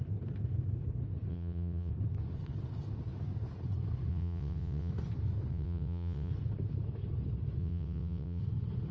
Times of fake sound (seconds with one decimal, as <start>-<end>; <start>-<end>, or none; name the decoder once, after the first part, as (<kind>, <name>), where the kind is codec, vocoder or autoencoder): 1.3-1.9 (vocoder, WaveNeXt); 4.1-4.9; 5.5-6.3; 7.6-8.4